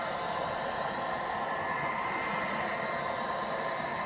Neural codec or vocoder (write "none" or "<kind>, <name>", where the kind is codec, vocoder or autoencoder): none